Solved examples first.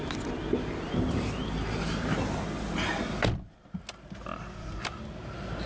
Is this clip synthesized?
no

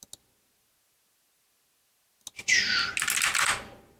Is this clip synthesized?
no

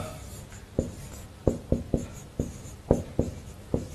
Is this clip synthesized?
no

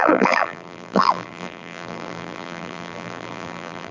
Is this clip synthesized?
yes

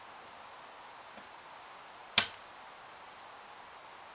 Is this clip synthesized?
no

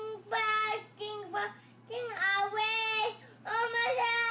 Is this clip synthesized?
no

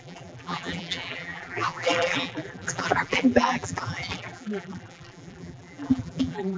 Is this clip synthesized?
yes